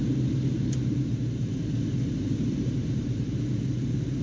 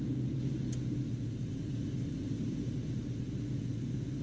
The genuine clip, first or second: second